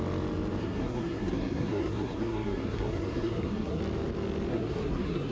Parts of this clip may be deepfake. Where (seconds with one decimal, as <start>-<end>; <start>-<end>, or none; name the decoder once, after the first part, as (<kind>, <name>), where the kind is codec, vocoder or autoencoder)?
0.6-3.8 (codec, SNAC); 4.5-5.3